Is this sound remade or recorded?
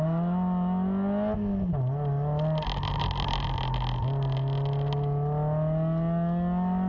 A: recorded